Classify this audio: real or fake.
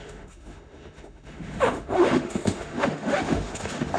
fake